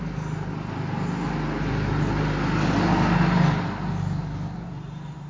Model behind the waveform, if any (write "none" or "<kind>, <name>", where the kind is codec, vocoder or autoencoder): none